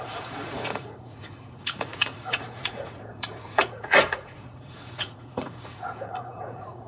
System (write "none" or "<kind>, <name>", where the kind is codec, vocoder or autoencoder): vocoder, Vocos